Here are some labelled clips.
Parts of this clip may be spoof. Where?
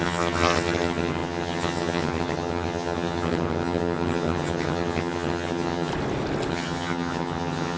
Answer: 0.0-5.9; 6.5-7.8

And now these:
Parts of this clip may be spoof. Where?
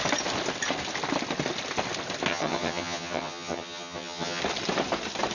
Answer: 2.3-4.4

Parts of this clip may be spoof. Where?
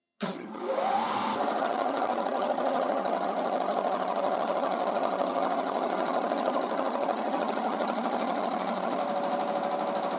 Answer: 0.0-0.6; 1.6-9.0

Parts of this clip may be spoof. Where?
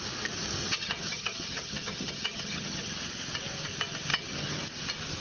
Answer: 0.6-3.0; 4.1-4.6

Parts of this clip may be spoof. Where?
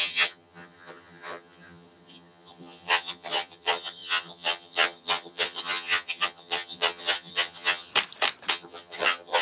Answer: 0.0-7.9; 8.5-9.4